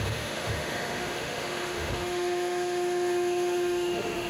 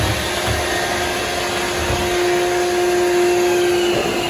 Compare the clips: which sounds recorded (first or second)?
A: second